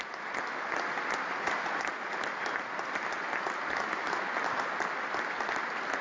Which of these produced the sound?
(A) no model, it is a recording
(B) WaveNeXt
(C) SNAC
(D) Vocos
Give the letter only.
A